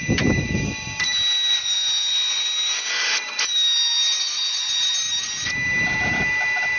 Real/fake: real